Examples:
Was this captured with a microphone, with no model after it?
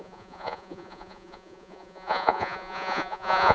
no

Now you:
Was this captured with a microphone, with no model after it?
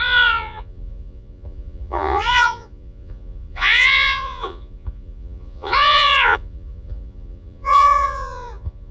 no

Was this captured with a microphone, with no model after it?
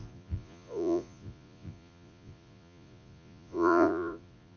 no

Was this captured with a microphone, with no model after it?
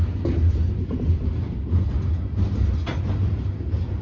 yes